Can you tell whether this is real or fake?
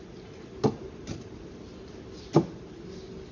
real